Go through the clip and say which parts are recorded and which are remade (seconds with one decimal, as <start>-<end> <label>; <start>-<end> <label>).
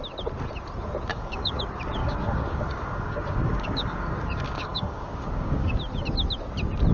0.0-1.1 recorded; 1.1-1.6 remade; 1.6-2.0 recorded; 2.0-5.8 remade; 5.8-6.9 recorded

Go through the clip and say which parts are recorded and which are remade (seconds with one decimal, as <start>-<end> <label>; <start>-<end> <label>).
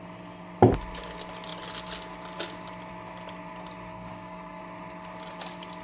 0.0-3.9 recorded; 3.9-4.6 remade; 4.6-5.8 recorded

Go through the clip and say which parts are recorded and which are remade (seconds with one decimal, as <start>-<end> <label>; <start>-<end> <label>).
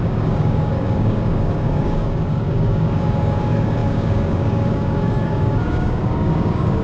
0.0-6.8 remade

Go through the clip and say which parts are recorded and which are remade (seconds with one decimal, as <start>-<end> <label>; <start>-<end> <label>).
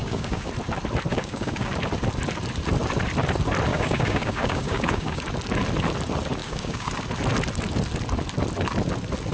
0.0-0.5 remade; 0.5-1.1 recorded; 1.1-1.7 remade; 1.7-3.7 recorded; 3.7-5.2 remade; 5.2-6.4 recorded; 6.4-6.9 remade; 6.9-9.3 recorded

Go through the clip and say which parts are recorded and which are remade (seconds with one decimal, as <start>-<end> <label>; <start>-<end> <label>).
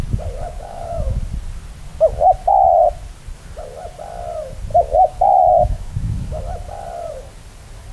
0.0-0.4 recorded; 0.4-1.2 remade; 1.2-4.7 recorded; 4.7-6.4 remade; 6.4-7.9 recorded